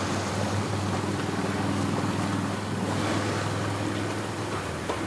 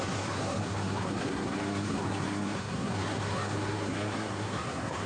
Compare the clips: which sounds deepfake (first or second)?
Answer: second